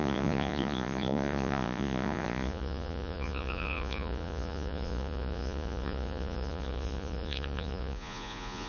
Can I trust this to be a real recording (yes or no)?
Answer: no